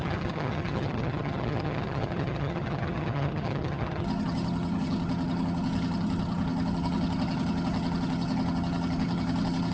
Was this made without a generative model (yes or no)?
no